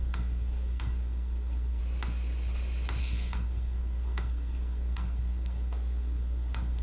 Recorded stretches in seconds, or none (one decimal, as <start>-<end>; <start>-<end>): 1.8-3.0